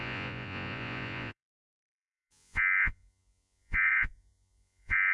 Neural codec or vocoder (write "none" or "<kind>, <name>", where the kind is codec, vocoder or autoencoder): vocoder, Vocos